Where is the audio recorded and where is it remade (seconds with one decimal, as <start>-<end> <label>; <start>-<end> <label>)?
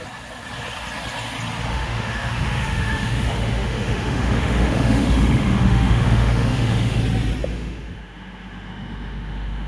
0.0-1.7 recorded; 1.7-7.0 remade; 7.0-7.5 recorded; 7.5-9.7 remade